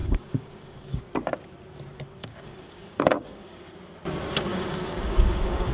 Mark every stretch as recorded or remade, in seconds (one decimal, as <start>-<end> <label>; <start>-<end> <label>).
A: 0.0-1.0 remade; 1.0-2.2 recorded; 2.2-3.7 remade; 3.7-4.5 recorded; 4.5-5.7 remade